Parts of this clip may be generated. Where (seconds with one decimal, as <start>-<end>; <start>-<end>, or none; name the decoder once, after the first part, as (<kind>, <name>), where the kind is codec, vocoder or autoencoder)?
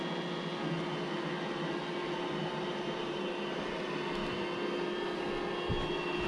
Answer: 2.4-3.2 (vocoder, BigVGAN v2)